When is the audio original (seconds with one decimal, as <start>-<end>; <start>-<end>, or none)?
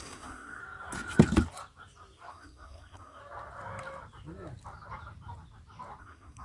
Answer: 0.6-2.3; 3.2-6.0